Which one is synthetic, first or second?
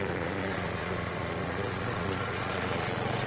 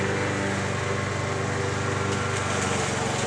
first